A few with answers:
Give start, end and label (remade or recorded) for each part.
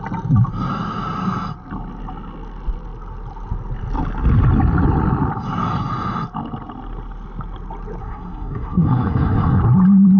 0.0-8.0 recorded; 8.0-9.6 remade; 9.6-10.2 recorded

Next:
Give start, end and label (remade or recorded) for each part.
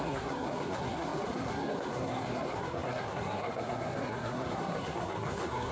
0.0-5.7 remade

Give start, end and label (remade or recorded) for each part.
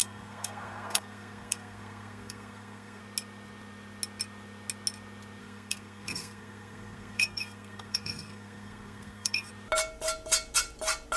0.0-3.0 remade; 3.0-5.4 recorded; 5.4-9.5 remade; 9.5-11.2 recorded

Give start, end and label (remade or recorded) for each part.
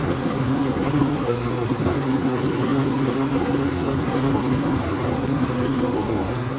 0.0-6.6 remade